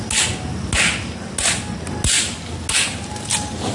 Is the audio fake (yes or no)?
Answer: no